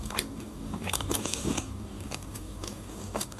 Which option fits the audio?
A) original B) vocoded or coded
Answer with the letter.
B